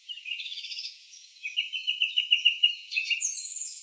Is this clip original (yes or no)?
no